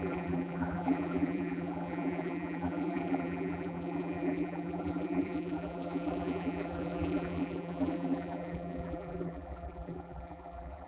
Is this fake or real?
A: fake